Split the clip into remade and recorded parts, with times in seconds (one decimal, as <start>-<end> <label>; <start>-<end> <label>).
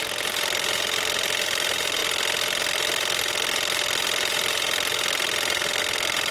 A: 0.0-6.3 recorded